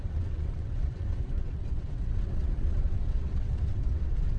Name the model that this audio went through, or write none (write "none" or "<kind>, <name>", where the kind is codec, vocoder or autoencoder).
vocoder, WaveNeXt